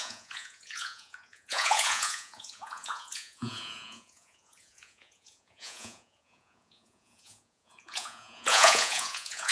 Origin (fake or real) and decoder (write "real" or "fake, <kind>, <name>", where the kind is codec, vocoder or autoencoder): fake, vocoder, Vocos